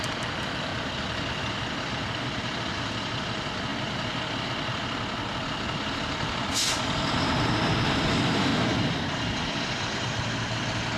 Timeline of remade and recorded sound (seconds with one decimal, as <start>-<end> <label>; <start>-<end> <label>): 0.0-0.7 remade; 0.7-1.8 recorded; 1.8-3.7 remade; 3.7-4.7 recorded; 4.7-8.5 remade; 8.5-9.6 recorded; 9.6-11.0 remade